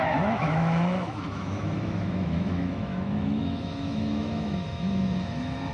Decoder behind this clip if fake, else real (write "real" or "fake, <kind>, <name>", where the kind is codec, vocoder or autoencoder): fake, autoencoder, DAC-VAE